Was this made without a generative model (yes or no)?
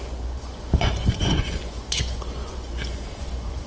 no